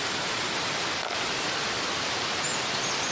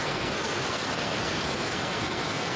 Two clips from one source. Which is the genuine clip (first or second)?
first